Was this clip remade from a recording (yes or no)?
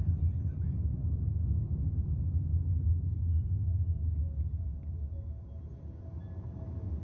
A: no